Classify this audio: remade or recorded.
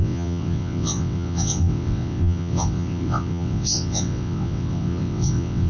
remade